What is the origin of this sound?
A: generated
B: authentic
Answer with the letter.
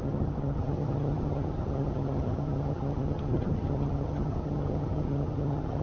A